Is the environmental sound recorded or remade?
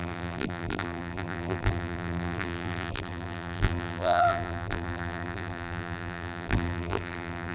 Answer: remade